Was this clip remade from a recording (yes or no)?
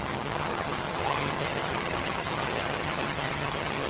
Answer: yes